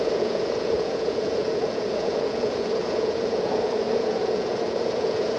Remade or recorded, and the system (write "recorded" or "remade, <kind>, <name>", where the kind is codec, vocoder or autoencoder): remade, vocoder, Vocos